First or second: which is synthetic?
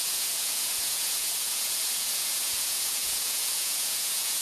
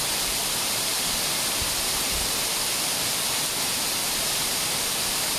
first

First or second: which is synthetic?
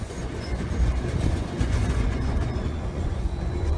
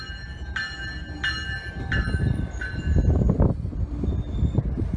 first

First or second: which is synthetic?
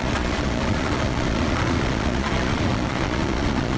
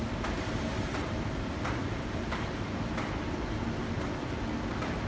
first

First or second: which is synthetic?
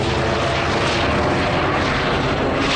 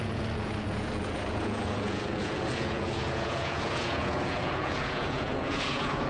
second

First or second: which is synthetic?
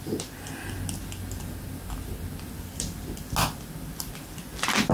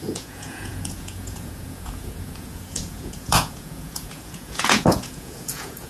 second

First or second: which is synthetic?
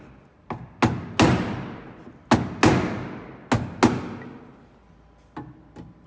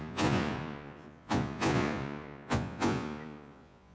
second